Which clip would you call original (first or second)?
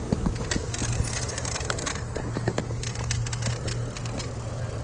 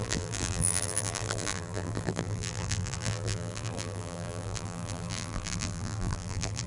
first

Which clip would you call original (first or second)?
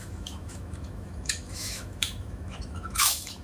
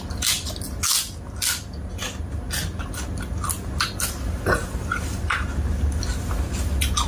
second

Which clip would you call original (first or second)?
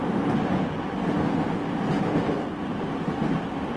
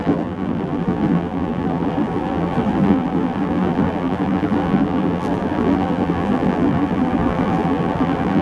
first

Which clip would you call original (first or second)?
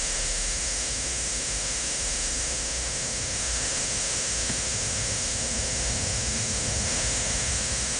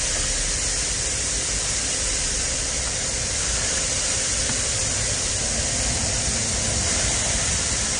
second